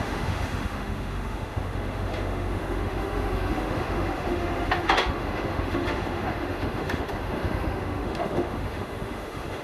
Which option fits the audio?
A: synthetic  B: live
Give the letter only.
A